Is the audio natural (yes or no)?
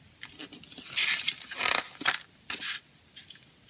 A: yes